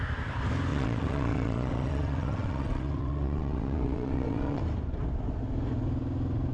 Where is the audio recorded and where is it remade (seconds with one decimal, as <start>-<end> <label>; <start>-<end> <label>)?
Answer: 0.0-0.7 recorded; 0.7-4.6 remade; 4.6-6.5 recorded